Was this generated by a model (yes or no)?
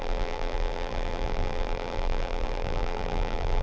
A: yes